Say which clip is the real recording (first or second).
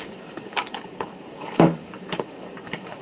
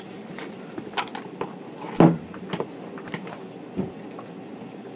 second